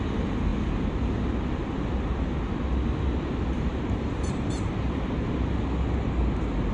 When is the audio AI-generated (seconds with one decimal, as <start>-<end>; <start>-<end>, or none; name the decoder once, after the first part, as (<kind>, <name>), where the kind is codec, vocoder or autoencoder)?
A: 3.7-4.7 (vocoder, BigVGAN v2)